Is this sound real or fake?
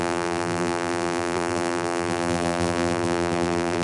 fake